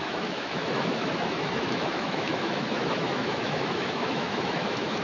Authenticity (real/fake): fake